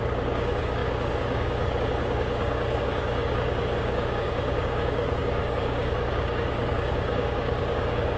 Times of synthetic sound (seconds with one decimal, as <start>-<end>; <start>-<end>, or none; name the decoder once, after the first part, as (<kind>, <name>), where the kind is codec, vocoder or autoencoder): 0.0-8.2 (codec, DAC)